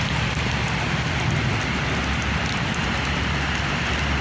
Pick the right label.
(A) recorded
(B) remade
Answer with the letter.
A